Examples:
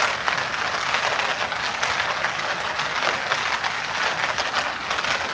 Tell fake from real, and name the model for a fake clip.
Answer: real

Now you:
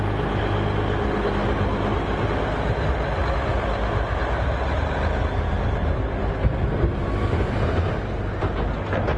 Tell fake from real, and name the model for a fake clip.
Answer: real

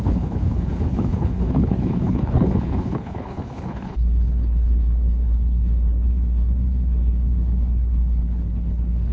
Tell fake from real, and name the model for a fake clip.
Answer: fake, codec, HILCodec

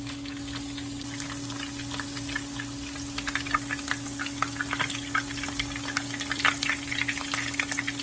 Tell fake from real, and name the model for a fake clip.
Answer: real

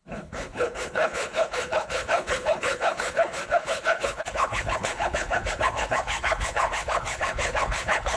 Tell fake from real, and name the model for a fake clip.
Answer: fake, codec, HILCodec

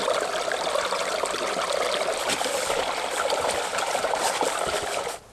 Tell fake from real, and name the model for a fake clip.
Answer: real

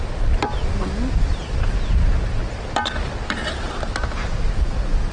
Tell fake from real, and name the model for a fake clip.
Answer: real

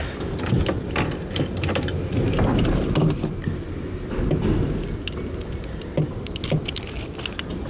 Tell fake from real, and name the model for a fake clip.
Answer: real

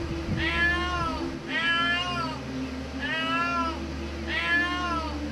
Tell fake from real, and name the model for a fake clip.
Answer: real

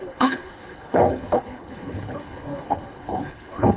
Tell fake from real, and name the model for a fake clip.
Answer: fake, codec, HILCodec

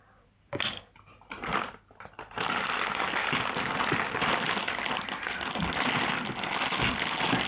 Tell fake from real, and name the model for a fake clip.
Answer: real